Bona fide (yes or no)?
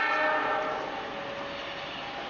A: yes